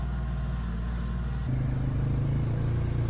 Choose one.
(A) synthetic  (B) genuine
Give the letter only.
B